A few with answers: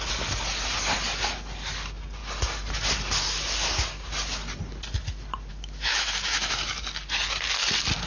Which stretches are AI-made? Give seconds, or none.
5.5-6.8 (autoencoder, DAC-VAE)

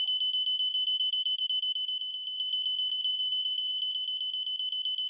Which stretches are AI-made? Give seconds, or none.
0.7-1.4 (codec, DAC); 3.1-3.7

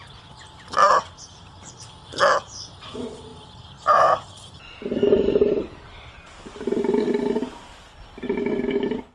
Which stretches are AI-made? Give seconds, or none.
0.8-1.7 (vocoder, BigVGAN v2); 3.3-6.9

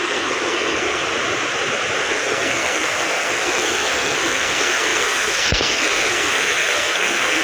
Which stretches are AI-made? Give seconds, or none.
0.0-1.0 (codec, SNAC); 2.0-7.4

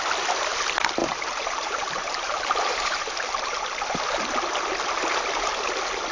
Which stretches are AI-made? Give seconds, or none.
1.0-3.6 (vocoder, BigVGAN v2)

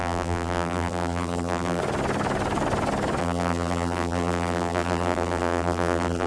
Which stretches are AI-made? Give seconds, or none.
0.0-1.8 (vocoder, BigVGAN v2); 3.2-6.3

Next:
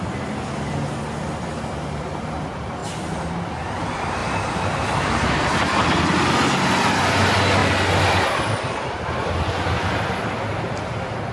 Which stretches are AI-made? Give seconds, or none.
4.2-6.0 (vocoder, BigVGAN v2)

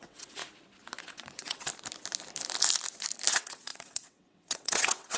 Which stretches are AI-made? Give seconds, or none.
0.0-0.4 (vocoder, WaveNeXt); 1.0-1.7; 3.3-5.2